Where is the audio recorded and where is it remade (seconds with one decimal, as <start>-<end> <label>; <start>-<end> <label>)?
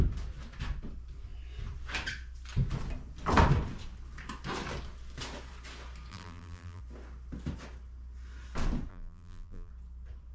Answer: 0.0-6.1 recorded; 6.1-6.8 remade; 6.8-8.9 recorded; 8.9-9.7 remade; 9.7-10.3 recorded